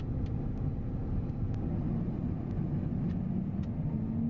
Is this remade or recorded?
recorded